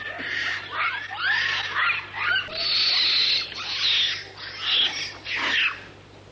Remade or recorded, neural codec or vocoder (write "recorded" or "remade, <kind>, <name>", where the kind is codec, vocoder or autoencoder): recorded